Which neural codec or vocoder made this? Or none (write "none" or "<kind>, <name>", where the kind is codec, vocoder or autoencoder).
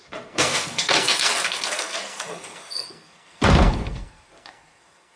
codec, SNAC